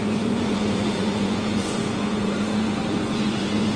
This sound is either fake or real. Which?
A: fake